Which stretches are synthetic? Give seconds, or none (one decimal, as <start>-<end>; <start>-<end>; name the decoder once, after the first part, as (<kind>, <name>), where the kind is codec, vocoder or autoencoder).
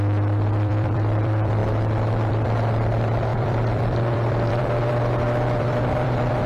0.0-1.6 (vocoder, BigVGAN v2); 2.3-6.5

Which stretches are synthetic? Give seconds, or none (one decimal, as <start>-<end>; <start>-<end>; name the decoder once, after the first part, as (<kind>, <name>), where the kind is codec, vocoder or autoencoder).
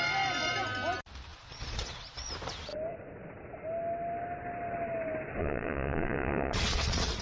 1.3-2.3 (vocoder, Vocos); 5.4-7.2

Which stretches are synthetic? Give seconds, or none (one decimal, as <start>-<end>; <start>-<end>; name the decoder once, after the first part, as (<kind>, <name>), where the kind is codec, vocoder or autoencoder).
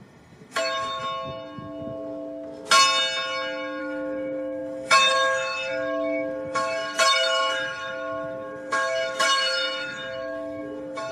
0.0-1.0 (autoencoder, DAC-VAE); 3.8-11.1